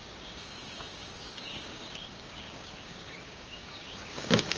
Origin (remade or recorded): remade